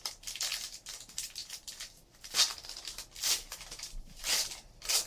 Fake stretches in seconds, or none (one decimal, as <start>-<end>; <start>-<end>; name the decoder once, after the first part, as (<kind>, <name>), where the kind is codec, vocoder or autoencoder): none